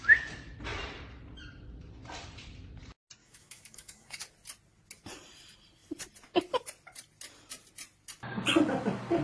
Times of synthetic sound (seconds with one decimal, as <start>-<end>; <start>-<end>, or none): 3.2-4.2